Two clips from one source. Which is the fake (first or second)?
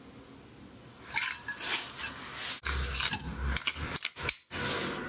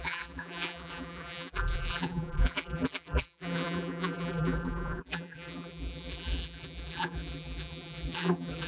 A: second